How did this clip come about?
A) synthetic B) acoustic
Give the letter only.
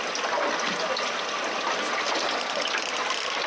B